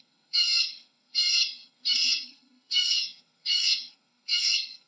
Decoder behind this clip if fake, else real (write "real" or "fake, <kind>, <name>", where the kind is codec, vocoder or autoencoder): fake, codec, SNAC